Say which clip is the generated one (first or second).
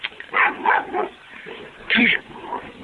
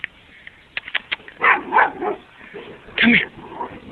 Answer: first